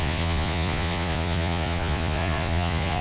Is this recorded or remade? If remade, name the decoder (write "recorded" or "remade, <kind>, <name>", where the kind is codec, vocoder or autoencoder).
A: remade, vocoder, Vocos